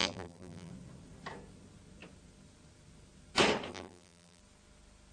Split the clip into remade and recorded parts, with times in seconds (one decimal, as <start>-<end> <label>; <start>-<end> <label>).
0.0-0.7 remade; 0.7-3.7 recorded; 3.7-4.4 remade; 4.4-5.1 recorded